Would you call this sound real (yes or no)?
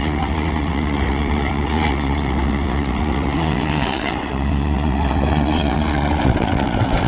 no